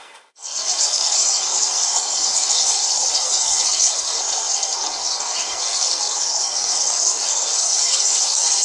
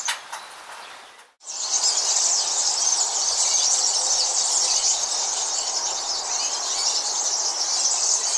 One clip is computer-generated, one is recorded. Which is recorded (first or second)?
second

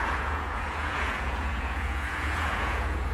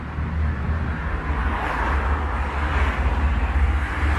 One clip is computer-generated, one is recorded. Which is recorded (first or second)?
second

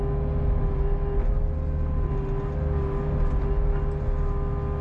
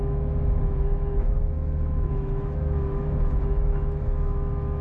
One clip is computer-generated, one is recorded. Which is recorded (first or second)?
first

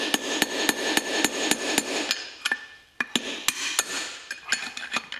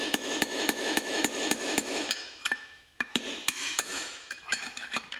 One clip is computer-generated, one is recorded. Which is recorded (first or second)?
first